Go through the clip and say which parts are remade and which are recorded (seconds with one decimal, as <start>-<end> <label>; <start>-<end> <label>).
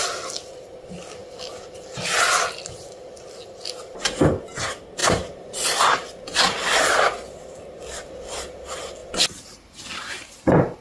0.0-1.2 recorded; 1.2-2.2 remade; 2.2-5.0 recorded; 5.0-7.8 remade; 7.8-10.8 recorded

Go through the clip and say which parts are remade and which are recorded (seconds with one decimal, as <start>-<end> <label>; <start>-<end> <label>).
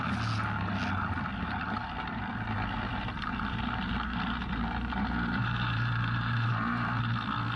0.0-2.9 recorded; 2.9-7.0 remade; 7.0-7.6 recorded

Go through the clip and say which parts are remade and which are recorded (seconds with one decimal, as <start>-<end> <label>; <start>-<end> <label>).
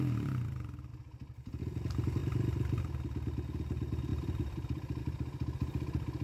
0.0-0.9 recorded; 0.9-1.6 remade; 1.6-2.2 recorded; 2.2-2.8 remade; 2.8-4.1 recorded; 4.1-5.0 remade; 5.0-6.2 recorded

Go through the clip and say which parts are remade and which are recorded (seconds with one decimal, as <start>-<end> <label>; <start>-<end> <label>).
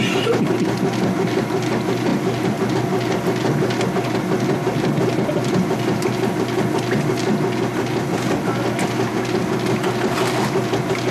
0.0-11.1 recorded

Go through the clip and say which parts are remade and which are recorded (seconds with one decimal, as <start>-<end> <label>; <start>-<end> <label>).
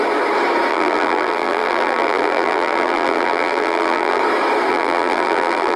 0.0-0.7 recorded; 0.7-4.2 remade; 4.2-4.7 recorded; 4.7-5.8 remade